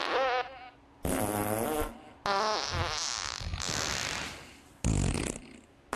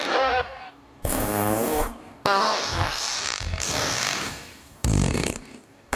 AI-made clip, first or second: second